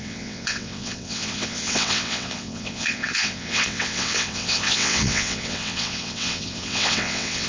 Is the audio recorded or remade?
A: remade